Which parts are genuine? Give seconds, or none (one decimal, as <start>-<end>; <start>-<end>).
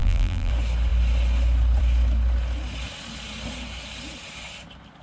0.5-5.0